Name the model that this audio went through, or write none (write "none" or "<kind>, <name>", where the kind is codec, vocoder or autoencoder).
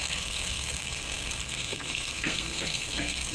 codec, SNAC